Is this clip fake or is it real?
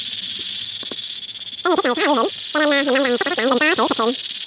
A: real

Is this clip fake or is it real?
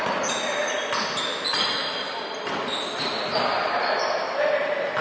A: real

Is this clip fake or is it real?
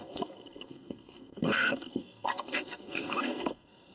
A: fake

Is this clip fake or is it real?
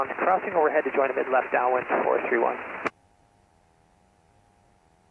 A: real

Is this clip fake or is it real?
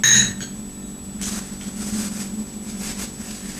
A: real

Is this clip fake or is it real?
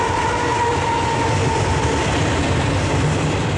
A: real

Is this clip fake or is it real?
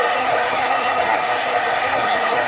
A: fake